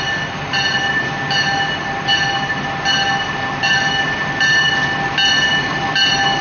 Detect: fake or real real